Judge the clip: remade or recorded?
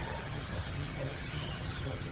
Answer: remade